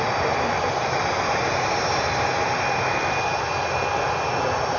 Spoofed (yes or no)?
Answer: no